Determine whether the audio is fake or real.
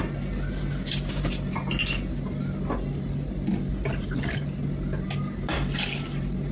real